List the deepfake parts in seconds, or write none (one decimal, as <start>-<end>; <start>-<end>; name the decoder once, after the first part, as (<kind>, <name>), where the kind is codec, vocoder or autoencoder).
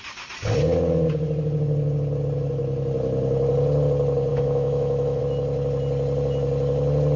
4.3-5.2 (autoencoder, DAC-VAE)